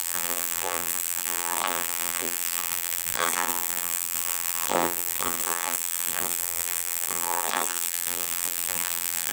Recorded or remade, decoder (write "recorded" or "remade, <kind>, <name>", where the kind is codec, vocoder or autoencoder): remade, vocoder, BigVGAN v2